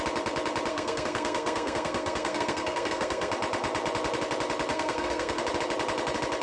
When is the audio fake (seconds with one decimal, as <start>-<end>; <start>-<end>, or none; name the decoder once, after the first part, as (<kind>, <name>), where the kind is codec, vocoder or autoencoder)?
0.7-3.3 (codec, SNAC); 4.7-5.4